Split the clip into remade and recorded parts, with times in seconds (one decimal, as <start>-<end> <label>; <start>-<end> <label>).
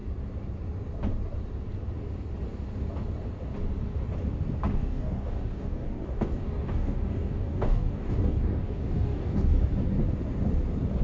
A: 0.0-4.7 recorded; 4.7-9.5 remade; 9.5-11.0 recorded